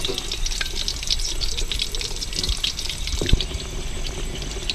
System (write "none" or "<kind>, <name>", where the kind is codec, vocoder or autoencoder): none